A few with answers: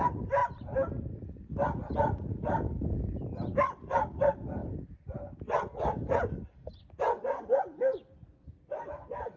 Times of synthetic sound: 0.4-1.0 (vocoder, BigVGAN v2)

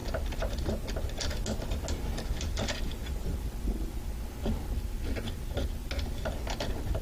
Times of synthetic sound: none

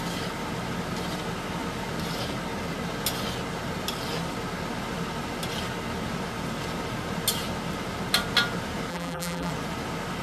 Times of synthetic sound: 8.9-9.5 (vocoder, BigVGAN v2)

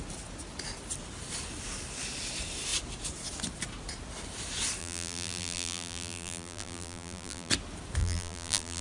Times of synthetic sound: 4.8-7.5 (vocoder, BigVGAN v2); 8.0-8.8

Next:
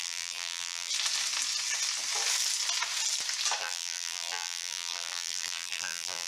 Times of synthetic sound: 0.0-0.9 (vocoder, BigVGAN v2); 3.6-6.3

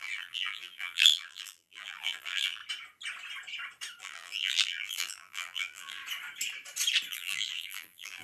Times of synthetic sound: 0.0-2.6 (vocoder, BigVGAN v2); 4.0-6.0; 7.1-8.2

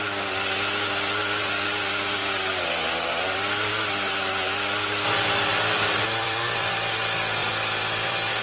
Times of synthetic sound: 6.0-6.7 (vocoder, BigVGAN v2); 7.4-8.4